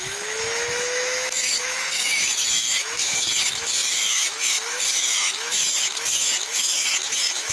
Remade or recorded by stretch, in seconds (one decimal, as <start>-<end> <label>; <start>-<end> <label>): 0.0-7.5 remade